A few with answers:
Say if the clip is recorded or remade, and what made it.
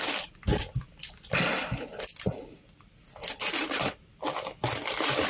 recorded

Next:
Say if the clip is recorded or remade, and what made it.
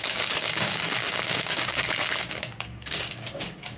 remade, codec, DAC